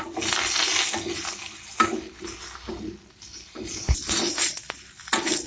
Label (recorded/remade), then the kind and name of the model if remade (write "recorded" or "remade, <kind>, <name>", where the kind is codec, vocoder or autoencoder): recorded